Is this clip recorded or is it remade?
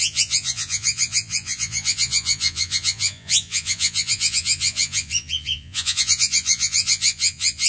remade